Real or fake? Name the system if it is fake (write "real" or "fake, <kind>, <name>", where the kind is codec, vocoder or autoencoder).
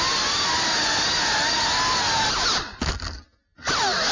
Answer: real